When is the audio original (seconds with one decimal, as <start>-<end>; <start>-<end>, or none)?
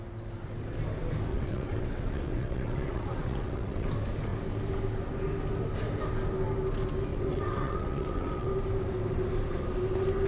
0.0-1.3; 3.9-7.1; 8.5-10.3